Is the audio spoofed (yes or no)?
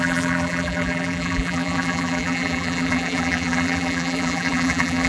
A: yes